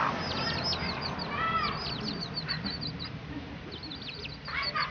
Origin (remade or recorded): recorded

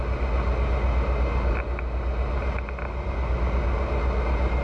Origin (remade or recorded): recorded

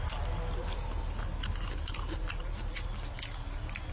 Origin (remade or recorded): recorded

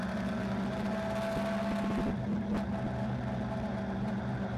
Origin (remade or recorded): recorded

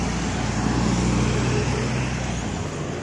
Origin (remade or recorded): recorded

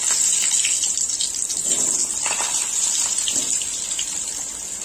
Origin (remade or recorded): recorded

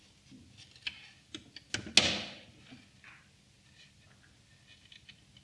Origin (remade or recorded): recorded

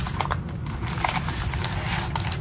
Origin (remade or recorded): recorded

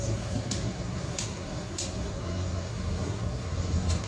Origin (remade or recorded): remade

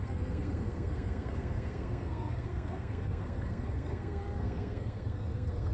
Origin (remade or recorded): remade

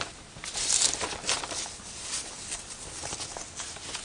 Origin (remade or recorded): recorded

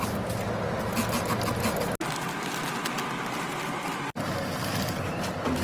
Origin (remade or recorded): recorded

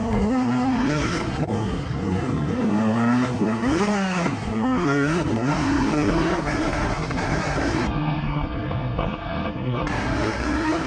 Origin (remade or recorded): remade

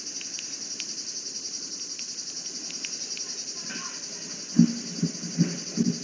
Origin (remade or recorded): recorded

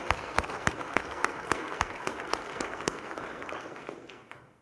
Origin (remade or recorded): remade